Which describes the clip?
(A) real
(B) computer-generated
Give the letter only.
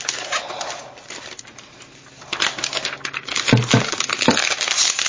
A